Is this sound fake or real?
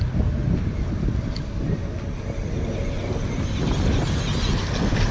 real